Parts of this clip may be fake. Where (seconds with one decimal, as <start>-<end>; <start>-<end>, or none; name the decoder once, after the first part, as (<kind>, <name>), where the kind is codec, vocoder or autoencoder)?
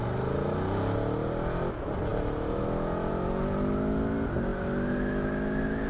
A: none